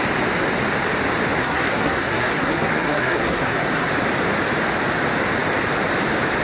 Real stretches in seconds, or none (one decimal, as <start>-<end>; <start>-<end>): 0.0-1.4; 3.9-6.4